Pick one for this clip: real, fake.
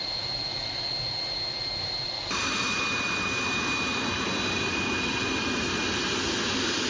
real